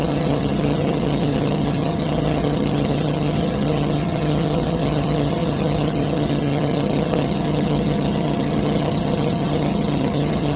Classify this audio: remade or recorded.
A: remade